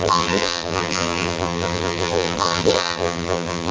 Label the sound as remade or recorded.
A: remade